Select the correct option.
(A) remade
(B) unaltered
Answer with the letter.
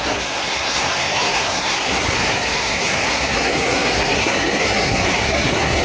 A